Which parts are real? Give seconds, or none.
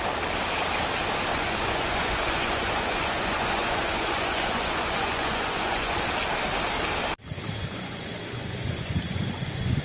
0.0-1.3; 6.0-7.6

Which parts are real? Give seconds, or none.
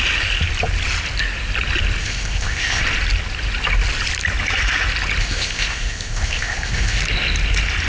0.0-2.0; 2.8-5.2; 7.0-7.9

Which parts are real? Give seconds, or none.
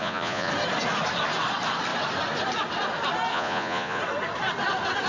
0.5-3.3; 4.0-5.1